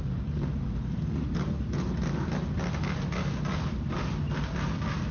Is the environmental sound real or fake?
real